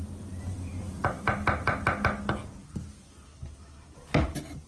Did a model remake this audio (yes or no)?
no